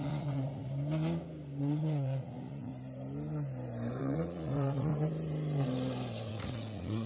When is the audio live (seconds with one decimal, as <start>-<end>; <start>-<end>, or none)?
0.7-1.6; 2.7-4.0; 4.9-6.3